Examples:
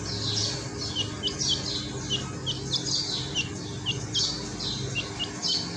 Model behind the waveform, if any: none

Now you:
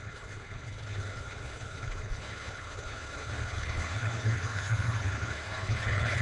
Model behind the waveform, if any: codec, HILCodec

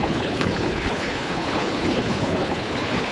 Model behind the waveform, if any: codec, HILCodec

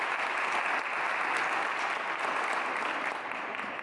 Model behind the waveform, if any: none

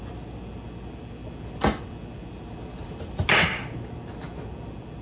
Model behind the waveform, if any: none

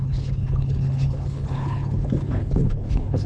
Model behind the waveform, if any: codec, HILCodec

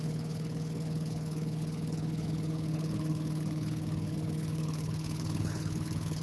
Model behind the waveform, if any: codec, HILCodec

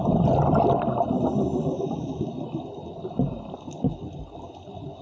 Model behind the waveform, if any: none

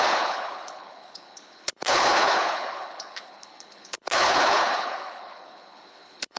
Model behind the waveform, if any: codec, HILCodec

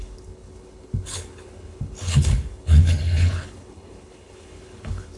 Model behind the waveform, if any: codec, HILCodec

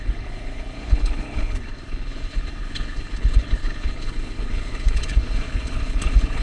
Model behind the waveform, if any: codec, HILCodec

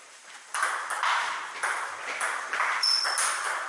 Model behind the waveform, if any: none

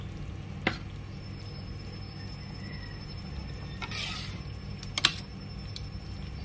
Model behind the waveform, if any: none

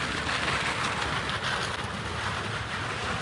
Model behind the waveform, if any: none